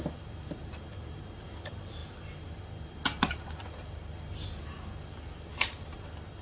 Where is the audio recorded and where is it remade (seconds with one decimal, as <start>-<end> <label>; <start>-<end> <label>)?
0.0-6.4 recorded